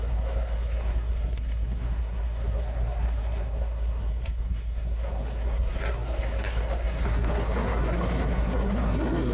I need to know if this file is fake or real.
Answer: fake